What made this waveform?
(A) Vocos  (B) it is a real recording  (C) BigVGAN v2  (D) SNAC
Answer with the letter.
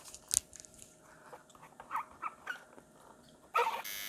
B